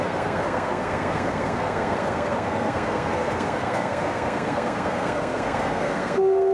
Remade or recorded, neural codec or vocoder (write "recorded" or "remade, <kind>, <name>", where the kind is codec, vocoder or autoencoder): remade, codec, SNAC